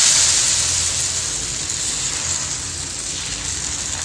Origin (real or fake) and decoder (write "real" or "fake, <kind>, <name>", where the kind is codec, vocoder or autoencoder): real